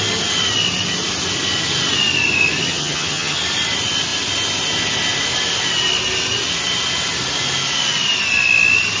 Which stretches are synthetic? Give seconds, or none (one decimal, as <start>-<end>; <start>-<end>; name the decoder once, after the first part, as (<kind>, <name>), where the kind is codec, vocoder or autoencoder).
2.7-3.4 (vocoder, HiFi-GAN)